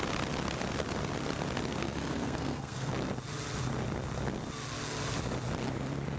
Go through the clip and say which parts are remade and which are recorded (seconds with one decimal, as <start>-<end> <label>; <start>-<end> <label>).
0.0-1.8 recorded; 1.8-2.9 remade; 2.9-6.2 recorded